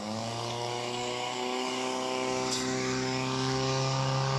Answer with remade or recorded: remade